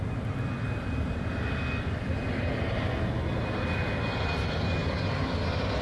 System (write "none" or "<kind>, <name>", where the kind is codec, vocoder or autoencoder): none